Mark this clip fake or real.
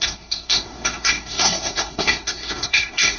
fake